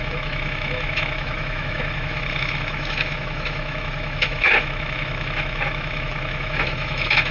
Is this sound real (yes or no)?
no